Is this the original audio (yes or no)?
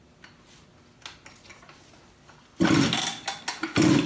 yes